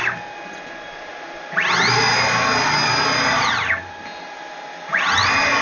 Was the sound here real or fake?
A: real